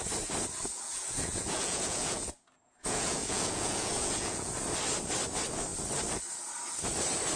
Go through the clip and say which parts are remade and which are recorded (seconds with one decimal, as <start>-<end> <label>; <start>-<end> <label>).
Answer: 0.0-0.7 recorded; 0.7-4.5 remade; 4.5-7.4 recorded